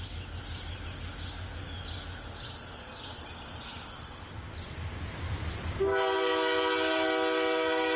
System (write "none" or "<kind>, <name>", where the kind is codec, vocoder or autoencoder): none